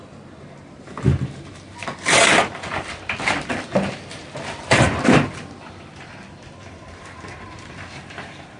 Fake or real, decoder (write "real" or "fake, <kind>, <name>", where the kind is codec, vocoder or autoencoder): fake, vocoder, BigVGAN v2